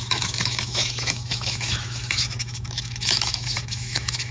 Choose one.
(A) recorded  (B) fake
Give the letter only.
B